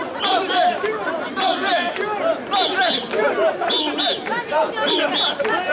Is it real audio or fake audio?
real